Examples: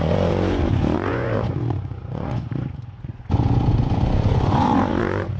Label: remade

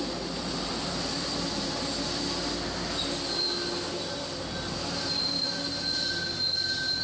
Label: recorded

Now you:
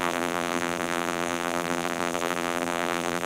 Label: remade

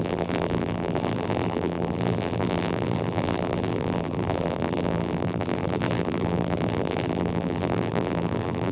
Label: remade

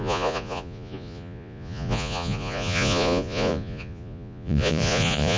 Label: remade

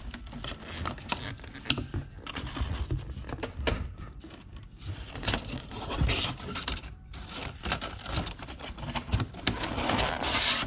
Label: recorded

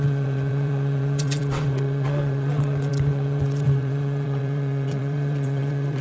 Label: remade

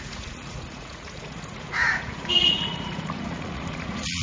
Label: remade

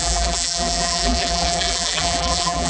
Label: remade